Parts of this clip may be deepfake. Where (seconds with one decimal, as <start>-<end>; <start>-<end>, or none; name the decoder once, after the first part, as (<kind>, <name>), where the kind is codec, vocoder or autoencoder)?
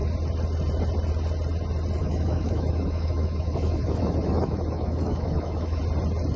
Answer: 2.0-5.8 (autoencoder, DAC-VAE)